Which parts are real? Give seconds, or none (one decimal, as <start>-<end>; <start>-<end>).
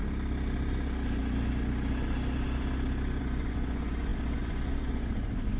0.0-3.2